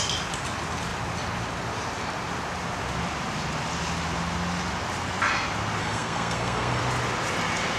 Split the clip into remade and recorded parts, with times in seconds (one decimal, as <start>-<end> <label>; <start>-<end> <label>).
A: 0.0-5.8 recorded; 5.8-6.8 remade; 6.8-7.8 recorded